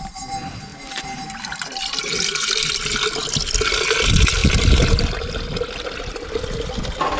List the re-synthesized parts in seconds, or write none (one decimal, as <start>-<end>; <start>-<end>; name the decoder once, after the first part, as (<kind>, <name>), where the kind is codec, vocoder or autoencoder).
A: none